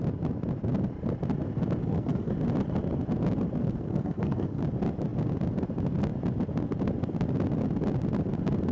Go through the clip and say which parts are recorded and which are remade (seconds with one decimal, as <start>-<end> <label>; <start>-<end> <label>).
0.0-1.8 recorded; 1.8-2.3 remade; 2.3-3.6 recorded; 3.6-4.6 remade; 4.6-8.7 recorded